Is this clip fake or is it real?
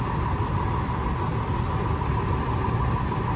real